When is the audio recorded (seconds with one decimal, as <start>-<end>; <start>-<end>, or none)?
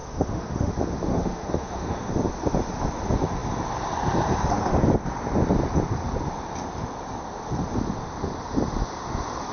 0.7-1.1; 2.1-9.5